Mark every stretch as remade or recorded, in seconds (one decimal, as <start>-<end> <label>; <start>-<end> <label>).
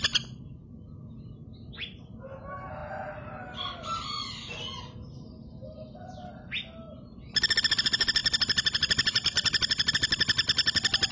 0.0-0.6 recorded; 0.6-1.1 remade; 1.1-8.2 recorded; 8.2-9.9 remade; 9.9-11.1 recorded